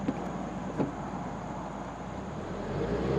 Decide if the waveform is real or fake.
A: real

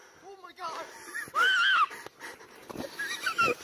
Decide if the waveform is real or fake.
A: real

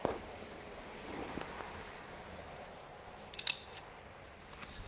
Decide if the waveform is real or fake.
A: real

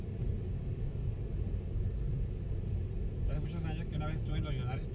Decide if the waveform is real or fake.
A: real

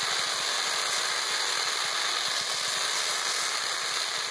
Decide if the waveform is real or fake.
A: real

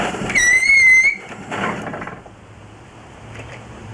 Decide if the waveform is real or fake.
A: fake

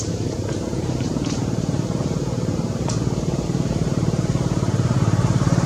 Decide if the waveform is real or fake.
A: fake